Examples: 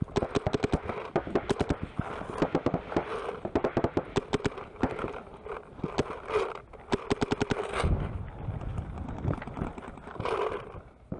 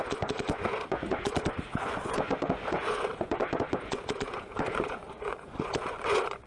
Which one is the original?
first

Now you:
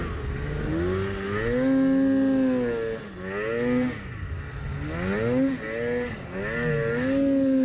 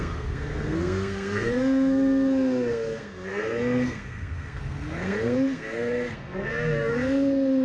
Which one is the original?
first